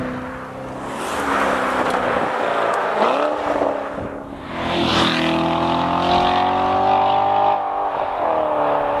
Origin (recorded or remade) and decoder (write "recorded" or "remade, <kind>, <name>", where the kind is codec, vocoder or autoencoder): recorded